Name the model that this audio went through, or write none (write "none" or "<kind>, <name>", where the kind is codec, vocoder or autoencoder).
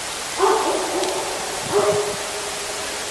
none